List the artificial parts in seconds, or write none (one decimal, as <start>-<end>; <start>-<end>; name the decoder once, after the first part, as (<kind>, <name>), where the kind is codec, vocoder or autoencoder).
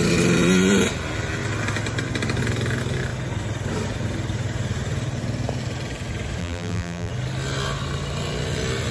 6.4-7.1 (vocoder, BigVGAN v2)